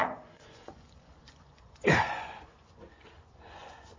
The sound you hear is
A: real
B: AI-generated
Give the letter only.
B